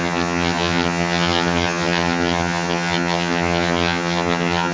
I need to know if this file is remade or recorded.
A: remade